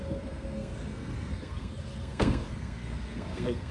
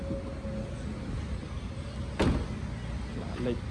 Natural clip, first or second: second